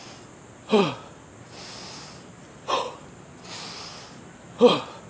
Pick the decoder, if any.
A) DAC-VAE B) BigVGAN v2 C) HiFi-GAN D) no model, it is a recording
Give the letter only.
D